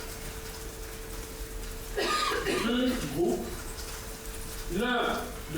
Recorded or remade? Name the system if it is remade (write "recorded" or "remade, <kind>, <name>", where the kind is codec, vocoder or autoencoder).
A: recorded